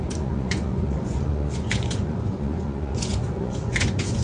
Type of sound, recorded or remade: remade